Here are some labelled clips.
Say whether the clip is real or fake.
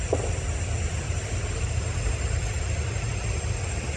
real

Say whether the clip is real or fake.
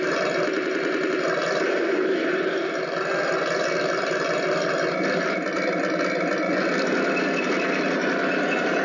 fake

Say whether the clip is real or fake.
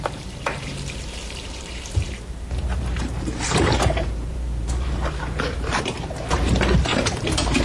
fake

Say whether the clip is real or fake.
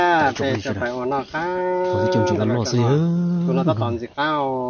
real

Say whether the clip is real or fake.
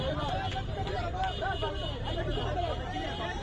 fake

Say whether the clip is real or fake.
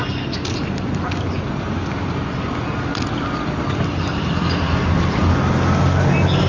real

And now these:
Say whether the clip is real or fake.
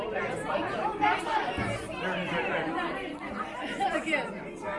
fake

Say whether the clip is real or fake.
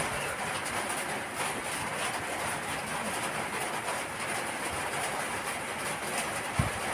real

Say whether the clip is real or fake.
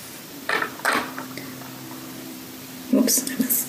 fake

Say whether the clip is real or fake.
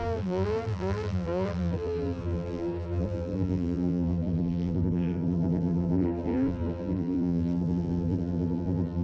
fake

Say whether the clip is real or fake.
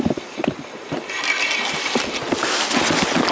real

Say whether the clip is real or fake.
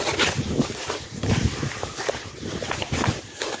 real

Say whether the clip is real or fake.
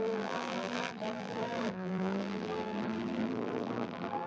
fake